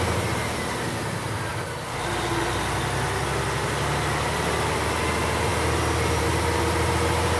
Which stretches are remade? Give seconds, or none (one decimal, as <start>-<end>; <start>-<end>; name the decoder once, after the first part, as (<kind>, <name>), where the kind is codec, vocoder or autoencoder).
0.0-1.5 (vocoder, BigVGAN v2); 5.1-5.5; 6.2-7.4